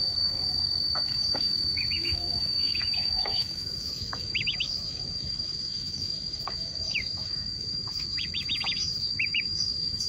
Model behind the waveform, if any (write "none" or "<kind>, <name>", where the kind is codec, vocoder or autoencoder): autoencoder, DAC-VAE